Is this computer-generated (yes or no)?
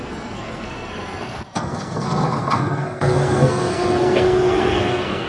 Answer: yes